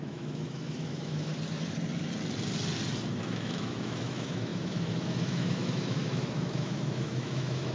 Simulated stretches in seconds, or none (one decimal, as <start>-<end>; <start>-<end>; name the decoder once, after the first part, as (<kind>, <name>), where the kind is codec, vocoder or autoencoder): 0.0-1.3 (autoencoder, DAC-VAE); 3.2-7.7